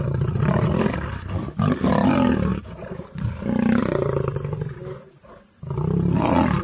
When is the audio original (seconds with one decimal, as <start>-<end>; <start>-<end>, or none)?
0.0-6.6